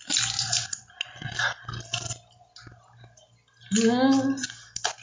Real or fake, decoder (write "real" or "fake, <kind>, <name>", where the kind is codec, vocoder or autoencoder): real